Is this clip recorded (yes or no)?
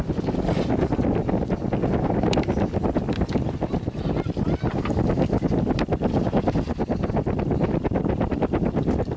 yes